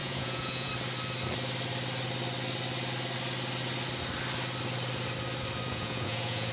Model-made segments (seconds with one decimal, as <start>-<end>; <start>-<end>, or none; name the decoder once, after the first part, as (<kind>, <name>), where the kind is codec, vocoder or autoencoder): 0.0-0.7 (vocoder, Vocos); 5.7-6.5